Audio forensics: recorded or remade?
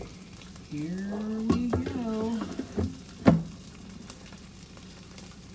recorded